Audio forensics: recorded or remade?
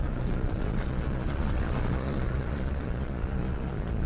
remade